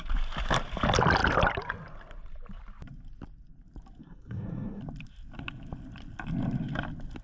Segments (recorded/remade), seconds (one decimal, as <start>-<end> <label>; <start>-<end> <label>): 0.0-4.0 recorded; 4.0-4.8 remade; 4.8-7.2 recorded